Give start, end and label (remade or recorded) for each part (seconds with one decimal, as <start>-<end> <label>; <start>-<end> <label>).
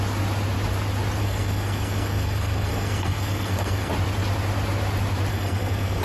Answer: 0.0-1.2 recorded; 1.2-3.9 remade; 3.9-5.3 recorded; 5.3-6.0 remade